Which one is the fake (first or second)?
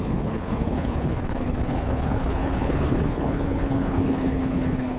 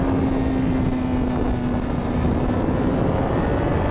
first